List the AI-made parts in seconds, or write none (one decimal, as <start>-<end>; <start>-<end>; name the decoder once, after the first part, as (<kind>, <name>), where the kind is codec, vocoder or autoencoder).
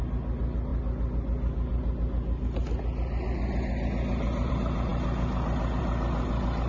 none